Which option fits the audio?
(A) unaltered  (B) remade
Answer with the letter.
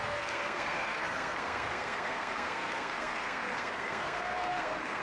B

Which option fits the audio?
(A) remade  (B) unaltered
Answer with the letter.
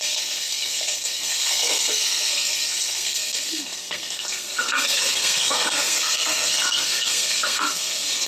A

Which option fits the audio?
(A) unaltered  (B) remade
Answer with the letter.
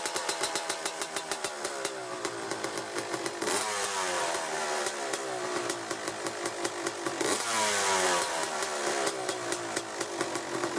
A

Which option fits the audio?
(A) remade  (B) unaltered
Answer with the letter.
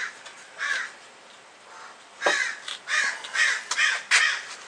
B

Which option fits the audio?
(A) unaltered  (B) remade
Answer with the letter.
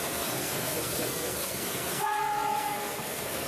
B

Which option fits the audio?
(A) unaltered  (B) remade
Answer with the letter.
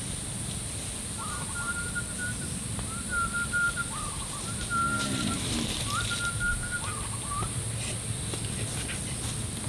A